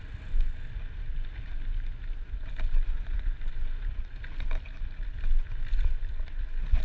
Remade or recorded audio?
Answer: recorded